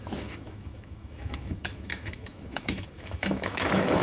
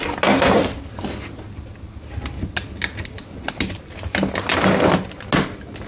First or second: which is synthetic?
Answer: first